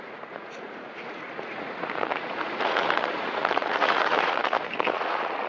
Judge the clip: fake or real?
fake